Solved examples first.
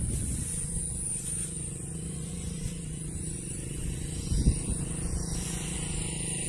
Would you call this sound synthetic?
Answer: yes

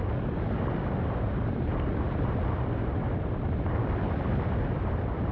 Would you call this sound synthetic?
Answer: no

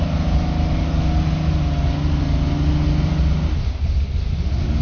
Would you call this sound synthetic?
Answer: no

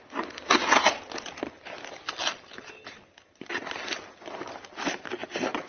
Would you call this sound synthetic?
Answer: no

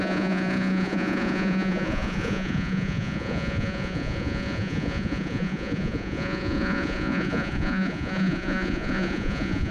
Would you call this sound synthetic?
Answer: yes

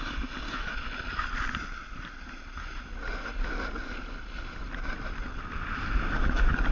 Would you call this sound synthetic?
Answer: no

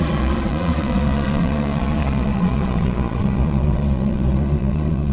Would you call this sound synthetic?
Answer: yes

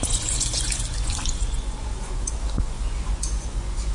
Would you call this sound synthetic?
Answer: yes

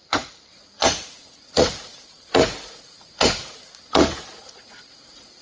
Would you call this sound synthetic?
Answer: yes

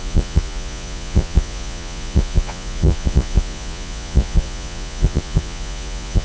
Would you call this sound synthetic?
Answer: yes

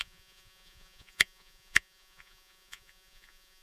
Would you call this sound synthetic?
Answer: yes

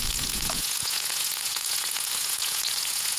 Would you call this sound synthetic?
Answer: yes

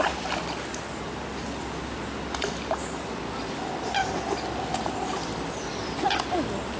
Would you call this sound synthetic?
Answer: no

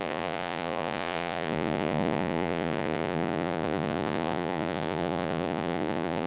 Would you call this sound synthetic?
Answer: yes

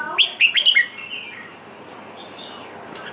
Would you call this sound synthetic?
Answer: no